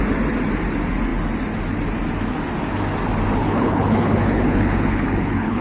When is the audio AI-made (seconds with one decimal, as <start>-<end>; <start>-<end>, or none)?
3.4-5.6